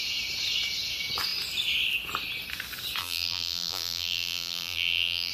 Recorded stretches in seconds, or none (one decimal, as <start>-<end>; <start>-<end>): 0.0-3.0